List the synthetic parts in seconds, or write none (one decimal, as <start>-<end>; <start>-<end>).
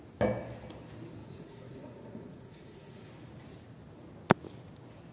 1.2-3.1